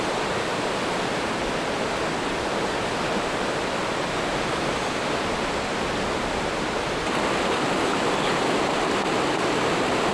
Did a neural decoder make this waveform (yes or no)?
no